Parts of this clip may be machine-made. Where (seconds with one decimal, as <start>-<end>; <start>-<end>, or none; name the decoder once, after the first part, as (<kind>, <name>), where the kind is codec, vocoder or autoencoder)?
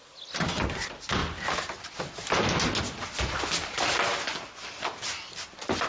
none